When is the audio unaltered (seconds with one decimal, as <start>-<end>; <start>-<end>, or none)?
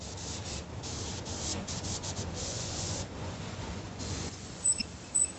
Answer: 0.0-1.5; 4.7-5.4